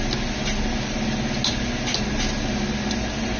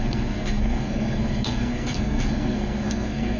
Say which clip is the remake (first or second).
second